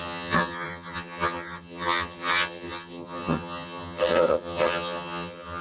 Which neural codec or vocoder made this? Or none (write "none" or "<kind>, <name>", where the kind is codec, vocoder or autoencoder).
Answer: vocoder, HiFi-GAN